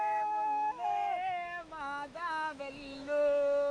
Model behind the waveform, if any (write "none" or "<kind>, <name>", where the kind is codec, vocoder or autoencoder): autoencoder, DAC-VAE